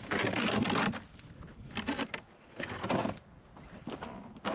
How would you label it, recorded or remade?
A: remade